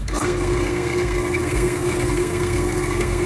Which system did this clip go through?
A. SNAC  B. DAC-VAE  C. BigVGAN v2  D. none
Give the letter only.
A